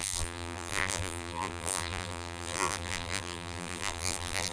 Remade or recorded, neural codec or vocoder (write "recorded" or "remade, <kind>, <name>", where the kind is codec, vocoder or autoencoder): remade, vocoder, BigVGAN v2